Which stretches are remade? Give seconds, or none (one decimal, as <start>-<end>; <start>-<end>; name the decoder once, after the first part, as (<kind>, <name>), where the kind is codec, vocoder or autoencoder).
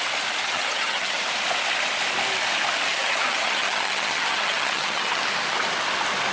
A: 0.4-1.2 (vocoder, HiFi-GAN); 2.9-5.2